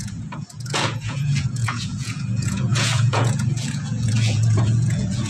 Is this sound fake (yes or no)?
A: yes